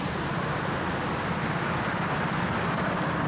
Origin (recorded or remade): recorded